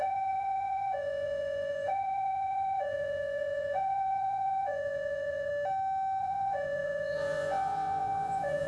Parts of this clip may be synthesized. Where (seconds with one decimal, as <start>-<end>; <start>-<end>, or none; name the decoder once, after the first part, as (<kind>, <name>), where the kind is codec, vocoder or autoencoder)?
0.0-5.5 (vocoder, Vocos); 6.2-8.7